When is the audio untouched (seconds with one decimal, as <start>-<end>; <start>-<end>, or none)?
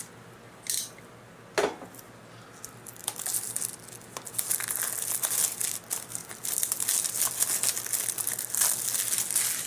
0.0-9.7